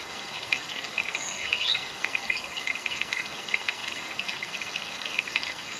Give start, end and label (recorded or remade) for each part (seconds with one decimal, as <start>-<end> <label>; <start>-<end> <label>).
0.0-5.8 remade

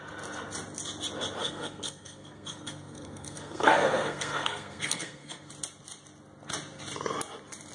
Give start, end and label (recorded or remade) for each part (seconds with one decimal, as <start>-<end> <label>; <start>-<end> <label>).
0.0-1.4 recorded; 1.4-5.5 remade; 5.5-7.7 recorded

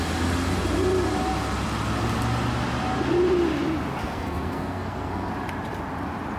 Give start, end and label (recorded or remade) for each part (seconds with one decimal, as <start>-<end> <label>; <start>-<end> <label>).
0.0-4.0 recorded; 4.0-5.3 remade; 5.3-6.4 recorded

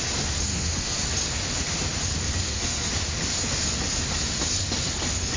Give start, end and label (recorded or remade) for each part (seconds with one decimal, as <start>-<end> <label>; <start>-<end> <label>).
0.0-0.5 recorded; 0.5-1.0 remade; 1.0-2.4 recorded; 2.4-2.9 remade; 2.9-5.4 recorded